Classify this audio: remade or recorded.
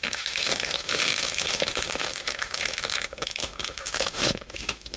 remade